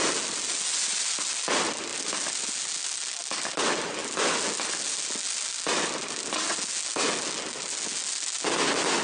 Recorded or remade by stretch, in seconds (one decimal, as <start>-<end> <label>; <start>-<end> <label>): 0.0-9.0 recorded